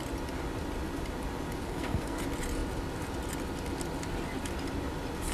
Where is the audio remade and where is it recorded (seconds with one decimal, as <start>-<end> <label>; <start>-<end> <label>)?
0.0-1.6 recorded; 1.6-2.2 remade; 2.2-5.3 recorded